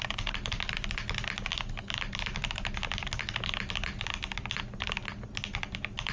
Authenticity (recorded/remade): recorded